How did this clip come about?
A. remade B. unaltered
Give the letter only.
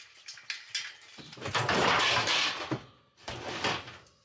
B